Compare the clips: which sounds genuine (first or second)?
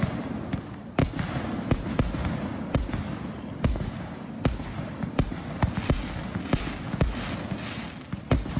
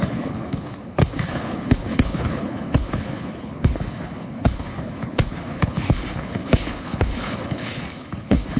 first